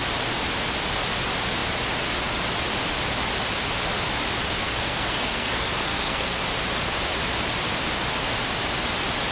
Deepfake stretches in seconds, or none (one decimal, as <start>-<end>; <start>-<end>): 4.6-6.4